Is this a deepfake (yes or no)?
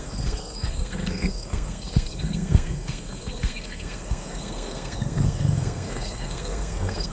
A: yes